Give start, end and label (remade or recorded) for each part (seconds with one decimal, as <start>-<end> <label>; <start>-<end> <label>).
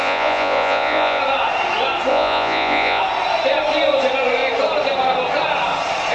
0.0-1.2 remade; 1.2-2.1 recorded; 2.1-3.0 remade; 3.0-6.1 recorded